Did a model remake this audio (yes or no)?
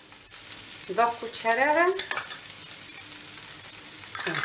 no